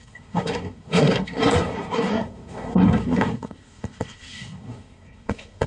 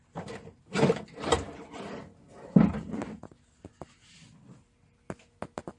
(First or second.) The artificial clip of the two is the first